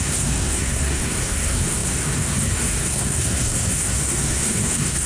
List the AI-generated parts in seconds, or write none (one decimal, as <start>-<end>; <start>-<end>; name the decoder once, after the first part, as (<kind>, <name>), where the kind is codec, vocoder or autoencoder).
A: 0.0-5.1 (codec, SNAC)